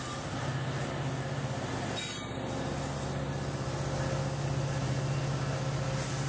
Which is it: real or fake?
real